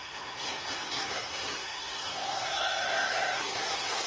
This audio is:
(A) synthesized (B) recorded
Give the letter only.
A